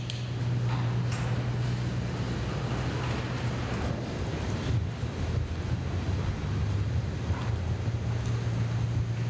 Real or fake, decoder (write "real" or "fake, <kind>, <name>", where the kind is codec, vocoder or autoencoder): real